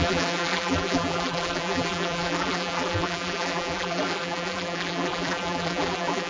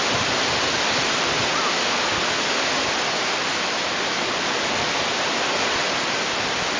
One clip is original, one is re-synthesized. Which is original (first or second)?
second